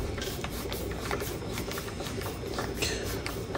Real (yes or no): yes